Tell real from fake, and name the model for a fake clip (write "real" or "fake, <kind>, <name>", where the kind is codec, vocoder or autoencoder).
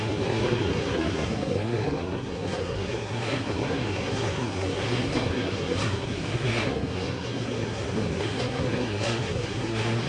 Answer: fake, codec, SNAC